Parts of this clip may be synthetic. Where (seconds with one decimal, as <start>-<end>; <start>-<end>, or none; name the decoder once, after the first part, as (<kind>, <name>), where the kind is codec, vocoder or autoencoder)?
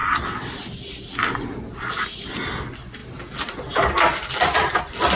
none